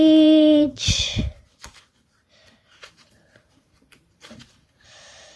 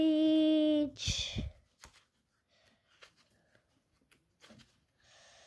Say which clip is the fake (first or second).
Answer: first